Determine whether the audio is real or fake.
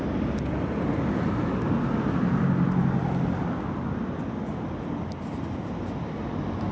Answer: real